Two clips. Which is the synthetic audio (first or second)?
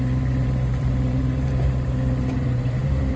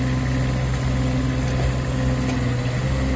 first